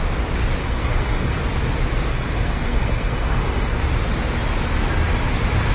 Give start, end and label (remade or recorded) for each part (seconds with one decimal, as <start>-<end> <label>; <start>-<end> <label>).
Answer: 0.0-0.6 recorded; 0.6-1.4 remade; 1.4-2.1 recorded; 2.1-3.8 remade; 3.8-5.7 recorded